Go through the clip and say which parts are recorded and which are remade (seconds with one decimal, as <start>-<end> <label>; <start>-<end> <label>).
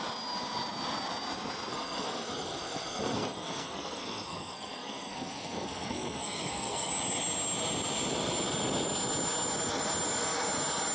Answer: 0.0-1.7 recorded; 1.7-6.9 remade; 6.9-10.9 recorded